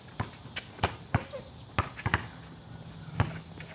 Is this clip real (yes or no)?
yes